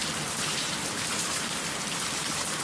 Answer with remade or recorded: remade